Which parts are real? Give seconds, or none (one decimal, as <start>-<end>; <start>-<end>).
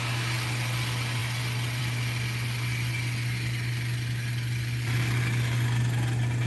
0.0-6.5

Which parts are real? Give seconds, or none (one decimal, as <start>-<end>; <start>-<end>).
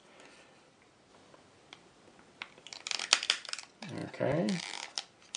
0.0-5.4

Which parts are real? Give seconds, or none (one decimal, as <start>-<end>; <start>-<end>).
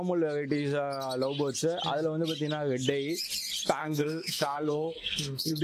0.0-3.8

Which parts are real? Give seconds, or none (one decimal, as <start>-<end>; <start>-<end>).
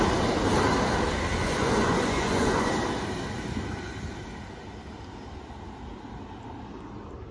0.0-1.4; 2.7-7.3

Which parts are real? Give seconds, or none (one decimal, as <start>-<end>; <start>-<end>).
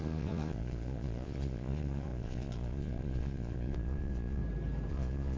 4.4-4.9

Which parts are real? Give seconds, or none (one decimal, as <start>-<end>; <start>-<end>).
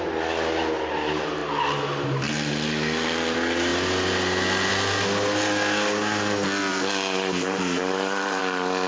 0.0-6.7; 8.4-8.9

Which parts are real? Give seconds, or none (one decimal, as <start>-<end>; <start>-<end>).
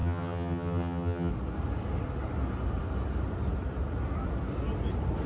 1.3-5.3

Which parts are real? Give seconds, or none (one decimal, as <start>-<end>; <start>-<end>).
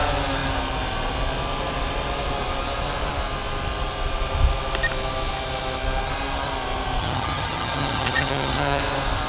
0.0-7.0; 8.8-9.3